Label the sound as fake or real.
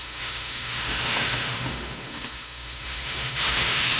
fake